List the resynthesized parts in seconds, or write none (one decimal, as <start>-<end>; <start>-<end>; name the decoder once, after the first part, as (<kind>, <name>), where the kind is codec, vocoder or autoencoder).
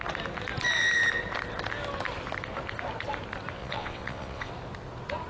3.6-4.5 (vocoder, WaveNeXt)